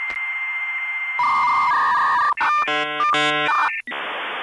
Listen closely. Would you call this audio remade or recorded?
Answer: recorded